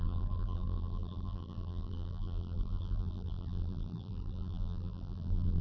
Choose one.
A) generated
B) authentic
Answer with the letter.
A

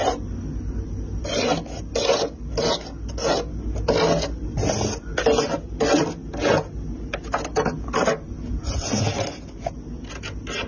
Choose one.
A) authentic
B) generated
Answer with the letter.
A